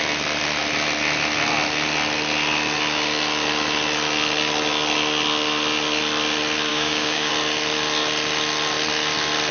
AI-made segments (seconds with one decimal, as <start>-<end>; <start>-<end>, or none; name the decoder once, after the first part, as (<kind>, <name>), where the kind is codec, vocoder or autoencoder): 6.7-7.3 (codec, DAC)